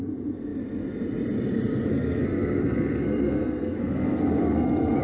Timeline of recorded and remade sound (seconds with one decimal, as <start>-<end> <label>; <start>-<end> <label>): 0.0-1.9 recorded; 1.9-5.0 remade